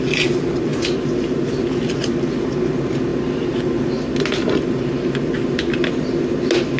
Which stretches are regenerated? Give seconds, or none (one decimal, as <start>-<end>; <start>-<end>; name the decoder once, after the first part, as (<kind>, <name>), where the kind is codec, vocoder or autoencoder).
none